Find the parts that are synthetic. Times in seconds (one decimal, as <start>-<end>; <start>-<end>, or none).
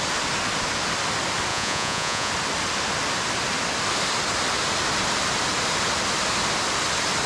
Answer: 1.5-2.3